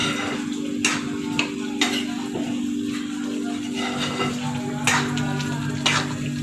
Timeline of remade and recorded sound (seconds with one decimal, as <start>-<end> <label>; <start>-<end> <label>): 0.0-6.4 recorded